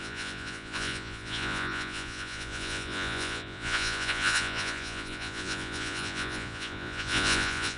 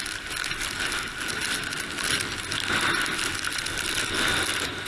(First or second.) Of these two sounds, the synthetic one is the first